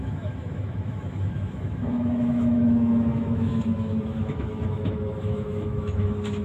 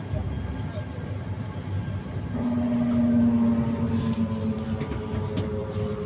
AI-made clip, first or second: first